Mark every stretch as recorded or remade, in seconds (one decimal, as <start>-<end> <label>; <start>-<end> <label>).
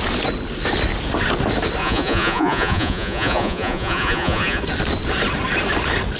0.0-1.8 recorded; 1.8-4.6 remade; 4.6-6.2 recorded